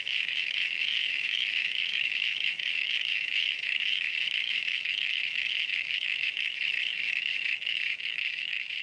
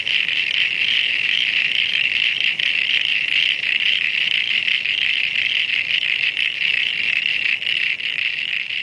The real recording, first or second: second